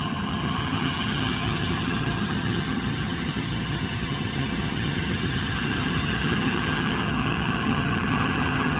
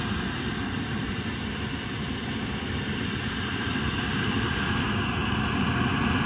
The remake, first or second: first